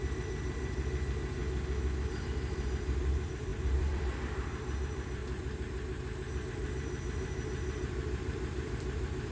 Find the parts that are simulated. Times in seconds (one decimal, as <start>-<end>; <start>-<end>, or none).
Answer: 0.0-1.4; 2.1-5.2; 6.5-9.3